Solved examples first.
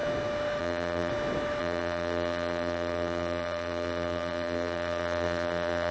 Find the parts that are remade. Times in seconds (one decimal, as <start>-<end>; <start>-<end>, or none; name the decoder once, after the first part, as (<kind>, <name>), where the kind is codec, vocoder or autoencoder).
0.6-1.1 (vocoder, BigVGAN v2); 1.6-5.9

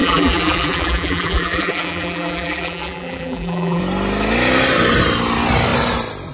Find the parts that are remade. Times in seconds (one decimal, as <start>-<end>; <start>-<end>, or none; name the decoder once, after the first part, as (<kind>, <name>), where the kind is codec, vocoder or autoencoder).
0.0-3.8 (vocoder, BigVGAN v2)

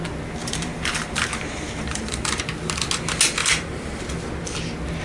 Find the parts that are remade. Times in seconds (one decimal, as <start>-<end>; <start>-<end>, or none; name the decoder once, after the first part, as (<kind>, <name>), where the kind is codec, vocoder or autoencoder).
0.4-2.4 (vocoder, BigVGAN v2); 3.4-4.0

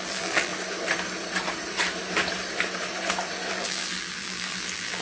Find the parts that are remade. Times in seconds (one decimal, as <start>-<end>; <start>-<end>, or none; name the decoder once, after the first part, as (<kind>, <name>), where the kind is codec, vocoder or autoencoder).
0.0-0.5 (vocoder, BigVGAN v2); 3.5-5.0